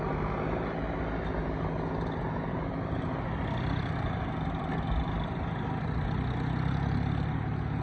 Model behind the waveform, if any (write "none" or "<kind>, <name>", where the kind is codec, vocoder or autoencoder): none